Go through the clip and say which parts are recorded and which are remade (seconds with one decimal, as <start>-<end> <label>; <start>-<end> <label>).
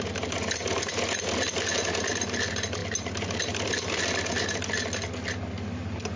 0.0-6.2 recorded